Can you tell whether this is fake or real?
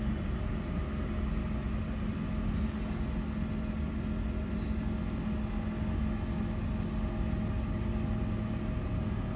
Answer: real